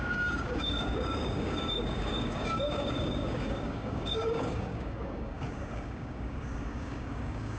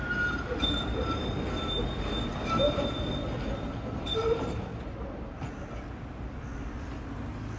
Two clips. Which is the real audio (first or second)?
second